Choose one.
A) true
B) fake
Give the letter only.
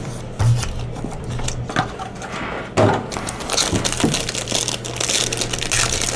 A